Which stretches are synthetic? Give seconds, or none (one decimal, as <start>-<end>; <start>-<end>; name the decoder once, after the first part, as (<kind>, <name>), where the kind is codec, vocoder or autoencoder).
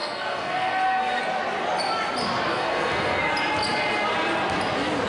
0.0-1.2 (codec, SNAC); 2.5-3.3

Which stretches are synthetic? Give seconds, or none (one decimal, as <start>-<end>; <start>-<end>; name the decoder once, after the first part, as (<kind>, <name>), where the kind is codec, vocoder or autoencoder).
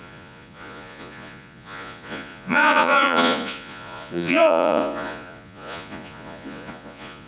0.0-7.3 (vocoder, Vocos)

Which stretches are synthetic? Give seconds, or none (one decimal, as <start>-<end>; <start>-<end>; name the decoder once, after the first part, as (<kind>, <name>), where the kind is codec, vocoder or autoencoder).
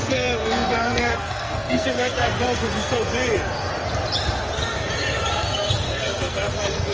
0.0-3.5 (codec, SNAC); 5.3-6.9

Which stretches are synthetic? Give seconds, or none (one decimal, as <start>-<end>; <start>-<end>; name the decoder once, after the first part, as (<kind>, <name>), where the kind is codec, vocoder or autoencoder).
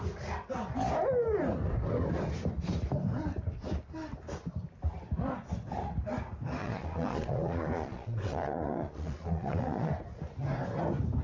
6.6-9.9 (vocoder, Vocos)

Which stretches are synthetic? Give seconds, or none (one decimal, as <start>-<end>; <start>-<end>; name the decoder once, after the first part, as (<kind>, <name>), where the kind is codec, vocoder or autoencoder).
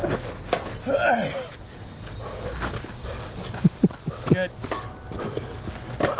none